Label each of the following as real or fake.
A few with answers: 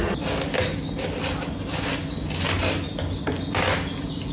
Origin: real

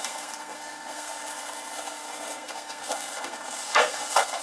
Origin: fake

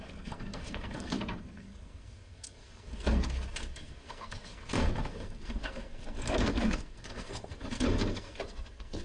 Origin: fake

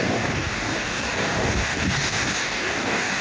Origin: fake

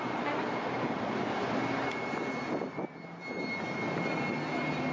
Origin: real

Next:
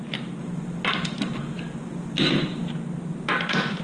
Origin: real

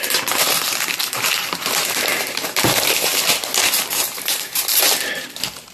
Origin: fake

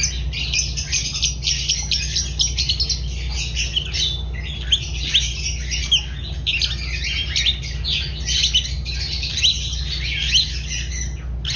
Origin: real